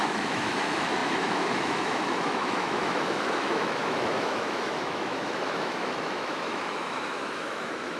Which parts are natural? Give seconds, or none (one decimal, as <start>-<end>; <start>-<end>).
none